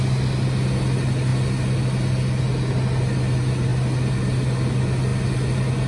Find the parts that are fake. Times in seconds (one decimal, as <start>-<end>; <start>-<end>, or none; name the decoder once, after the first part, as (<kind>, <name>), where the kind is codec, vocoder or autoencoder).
none